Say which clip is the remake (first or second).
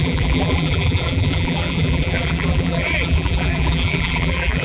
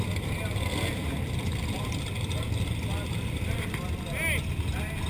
first